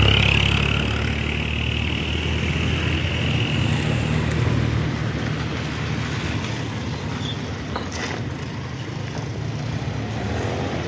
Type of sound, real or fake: real